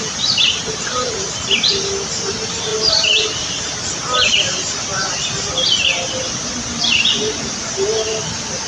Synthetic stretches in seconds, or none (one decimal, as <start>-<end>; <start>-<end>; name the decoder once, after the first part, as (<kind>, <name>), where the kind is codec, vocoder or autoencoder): none

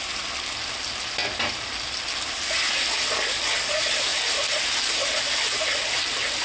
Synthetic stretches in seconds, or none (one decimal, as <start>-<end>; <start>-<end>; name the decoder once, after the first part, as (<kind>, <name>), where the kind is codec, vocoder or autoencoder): none